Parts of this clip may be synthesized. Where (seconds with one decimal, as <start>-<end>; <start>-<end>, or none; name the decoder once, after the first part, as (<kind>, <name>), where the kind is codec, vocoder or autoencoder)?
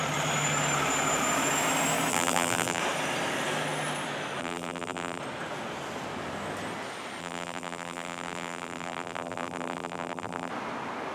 2.1-2.8 (vocoder, BigVGAN v2); 4.4-5.2; 7.2-10.5